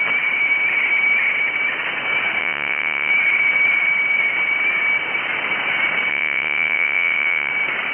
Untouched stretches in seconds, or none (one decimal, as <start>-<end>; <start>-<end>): 0.0-2.4; 3.1-6.1; 7.5-7.9